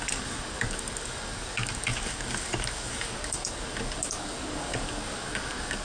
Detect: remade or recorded remade